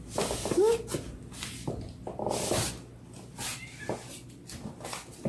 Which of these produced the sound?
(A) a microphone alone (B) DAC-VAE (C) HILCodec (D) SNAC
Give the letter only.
A